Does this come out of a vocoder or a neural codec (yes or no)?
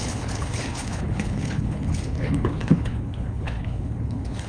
yes